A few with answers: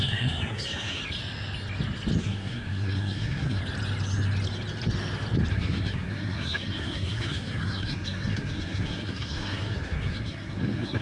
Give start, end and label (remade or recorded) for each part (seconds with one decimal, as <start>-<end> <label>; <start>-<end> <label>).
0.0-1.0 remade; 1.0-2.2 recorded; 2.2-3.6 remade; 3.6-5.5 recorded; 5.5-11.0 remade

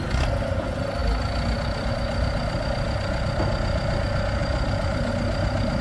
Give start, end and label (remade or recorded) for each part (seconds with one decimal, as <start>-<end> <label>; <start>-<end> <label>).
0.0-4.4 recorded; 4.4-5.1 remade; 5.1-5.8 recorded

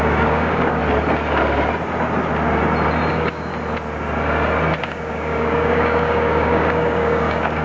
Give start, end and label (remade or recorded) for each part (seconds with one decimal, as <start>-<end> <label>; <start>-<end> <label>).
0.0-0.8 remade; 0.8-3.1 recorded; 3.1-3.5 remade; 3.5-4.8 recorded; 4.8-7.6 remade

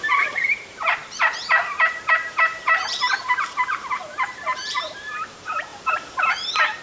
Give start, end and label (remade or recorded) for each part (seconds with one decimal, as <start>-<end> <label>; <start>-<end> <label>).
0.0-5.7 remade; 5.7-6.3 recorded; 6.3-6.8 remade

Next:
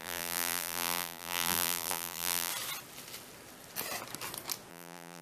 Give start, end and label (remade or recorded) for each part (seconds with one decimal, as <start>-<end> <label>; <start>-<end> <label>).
0.0-2.5 remade; 2.5-4.7 recorded; 4.7-5.2 remade

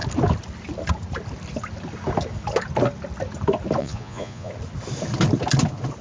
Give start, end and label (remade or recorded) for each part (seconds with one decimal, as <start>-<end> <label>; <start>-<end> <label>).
0.0-3.8 recorded; 3.8-4.5 remade; 4.5-6.0 recorded

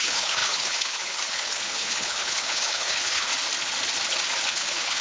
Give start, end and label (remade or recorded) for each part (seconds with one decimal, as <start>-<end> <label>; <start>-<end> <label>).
0.0-3.3 remade; 3.3-4.5 recorded; 4.5-5.0 remade